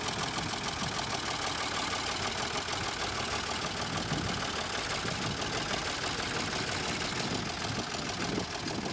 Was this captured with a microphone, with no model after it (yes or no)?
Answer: yes